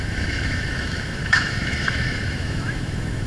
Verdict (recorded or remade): remade